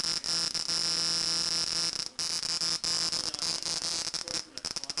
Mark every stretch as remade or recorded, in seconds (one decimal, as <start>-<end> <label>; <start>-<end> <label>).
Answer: 0.0-5.0 recorded